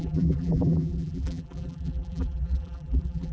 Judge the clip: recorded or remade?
remade